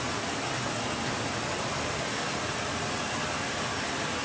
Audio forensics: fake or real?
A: real